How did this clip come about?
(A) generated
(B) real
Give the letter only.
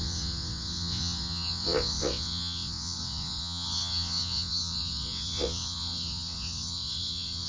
A